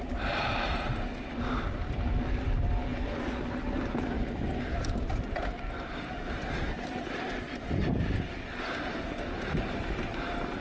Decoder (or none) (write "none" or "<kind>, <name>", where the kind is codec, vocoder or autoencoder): none